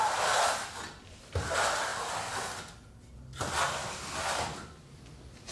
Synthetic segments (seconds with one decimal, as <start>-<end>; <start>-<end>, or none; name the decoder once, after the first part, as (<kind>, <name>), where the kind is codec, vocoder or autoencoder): none